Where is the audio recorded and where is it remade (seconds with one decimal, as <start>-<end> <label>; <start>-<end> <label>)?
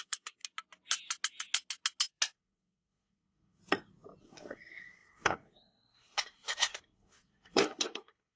0.0-0.4 remade; 0.4-2.3 recorded; 2.3-3.6 remade; 3.6-4.2 recorded; 4.2-8.4 remade